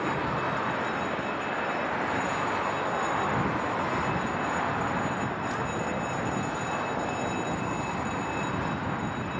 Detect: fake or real real